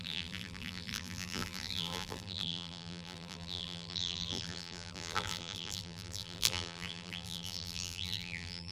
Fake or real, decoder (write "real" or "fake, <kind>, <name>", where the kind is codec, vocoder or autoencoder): fake, vocoder, BigVGAN v2